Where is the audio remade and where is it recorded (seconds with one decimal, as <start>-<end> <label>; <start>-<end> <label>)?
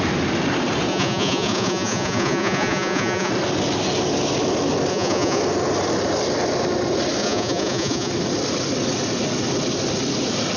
0.0-0.9 recorded; 0.9-3.3 remade; 3.3-4.9 recorded; 4.9-5.4 remade; 5.4-7.2 recorded; 7.2-8.1 remade; 8.1-10.6 recorded